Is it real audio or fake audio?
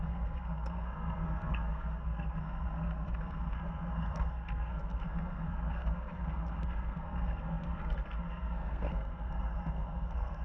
fake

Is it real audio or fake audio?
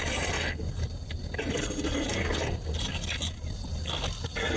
real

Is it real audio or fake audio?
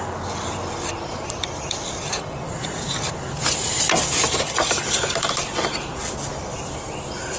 fake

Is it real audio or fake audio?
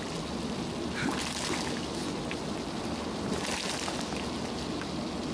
real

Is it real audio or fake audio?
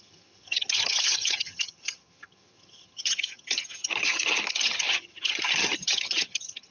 fake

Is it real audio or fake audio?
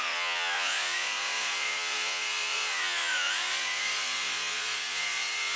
fake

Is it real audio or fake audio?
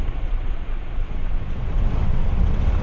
fake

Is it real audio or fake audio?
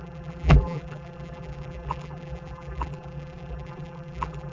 fake